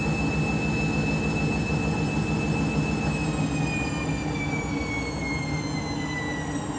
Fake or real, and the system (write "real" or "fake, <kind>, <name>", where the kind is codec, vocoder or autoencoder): real